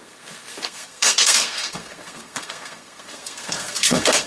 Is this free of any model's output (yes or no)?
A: no